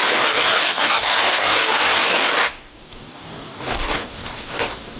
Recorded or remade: remade